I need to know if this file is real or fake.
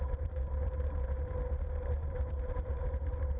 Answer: fake